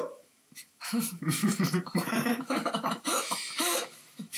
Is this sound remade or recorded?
remade